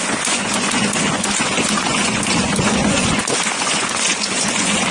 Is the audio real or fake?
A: fake